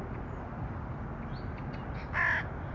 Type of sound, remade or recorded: recorded